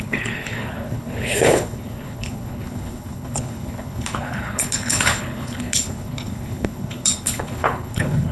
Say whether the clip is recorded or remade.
remade